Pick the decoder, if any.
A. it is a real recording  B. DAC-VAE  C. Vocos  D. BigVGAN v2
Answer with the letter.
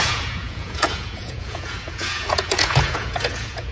C